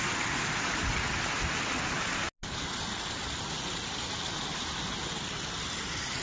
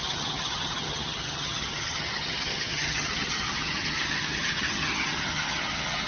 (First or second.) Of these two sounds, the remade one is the second